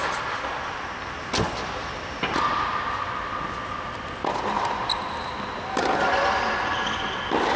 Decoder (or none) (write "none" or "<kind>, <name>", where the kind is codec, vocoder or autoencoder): none